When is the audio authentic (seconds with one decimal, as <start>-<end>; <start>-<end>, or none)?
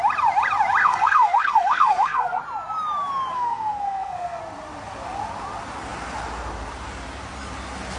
0.0-0.8; 2.4-3.3; 4.4-8.0